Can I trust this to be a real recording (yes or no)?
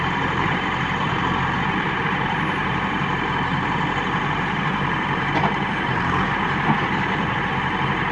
no